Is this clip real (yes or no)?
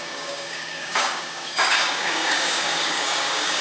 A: no